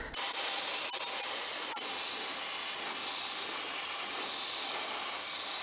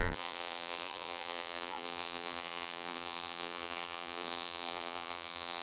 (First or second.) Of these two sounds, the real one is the first